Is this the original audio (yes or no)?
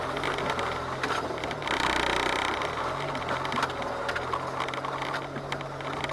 yes